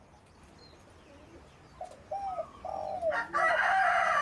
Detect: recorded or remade recorded